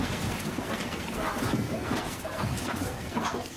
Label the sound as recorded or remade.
remade